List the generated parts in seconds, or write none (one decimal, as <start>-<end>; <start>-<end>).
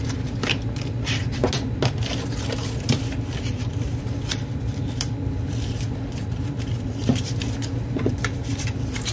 0.0-1.4; 3.3-9.1